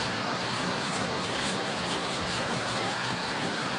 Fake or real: fake